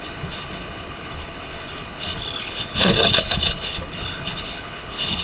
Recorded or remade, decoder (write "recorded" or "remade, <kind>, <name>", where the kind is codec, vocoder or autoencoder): remade, codec, HILCodec